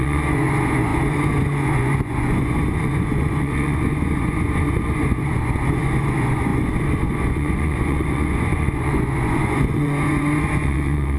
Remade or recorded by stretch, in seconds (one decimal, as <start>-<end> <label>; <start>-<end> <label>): 0.0-11.2 remade